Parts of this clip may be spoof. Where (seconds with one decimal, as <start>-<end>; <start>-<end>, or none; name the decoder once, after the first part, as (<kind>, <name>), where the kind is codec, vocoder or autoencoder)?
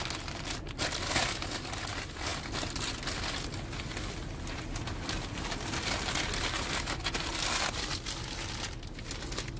none